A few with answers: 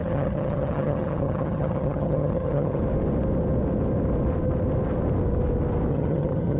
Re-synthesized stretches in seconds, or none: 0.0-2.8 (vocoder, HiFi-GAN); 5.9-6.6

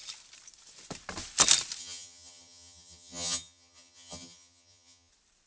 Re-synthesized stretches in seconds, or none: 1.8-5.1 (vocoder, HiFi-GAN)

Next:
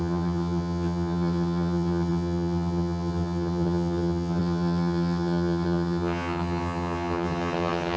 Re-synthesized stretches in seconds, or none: 0.0-8.0 (vocoder, HiFi-GAN)

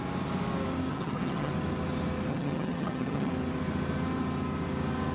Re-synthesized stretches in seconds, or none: 0.9-1.5 (vocoder, HiFi-GAN); 2.3-3.3